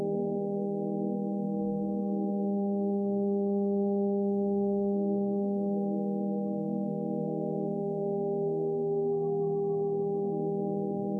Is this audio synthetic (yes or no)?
yes